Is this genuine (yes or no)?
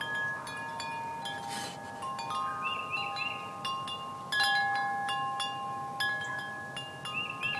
yes